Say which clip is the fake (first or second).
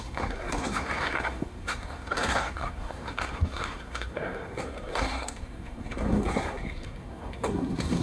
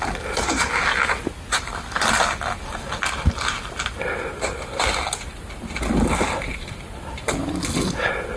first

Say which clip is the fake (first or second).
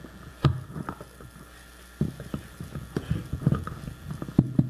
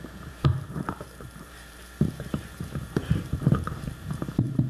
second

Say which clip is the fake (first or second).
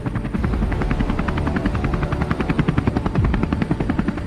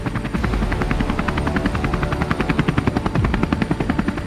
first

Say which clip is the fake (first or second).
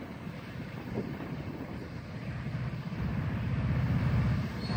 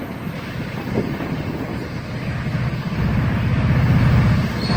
first